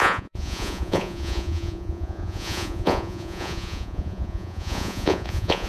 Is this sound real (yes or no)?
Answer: no